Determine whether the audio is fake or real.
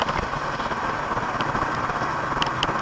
real